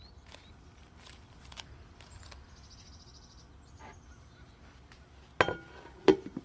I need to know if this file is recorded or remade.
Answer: recorded